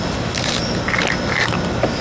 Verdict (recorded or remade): recorded